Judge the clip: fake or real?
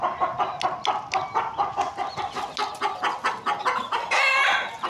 real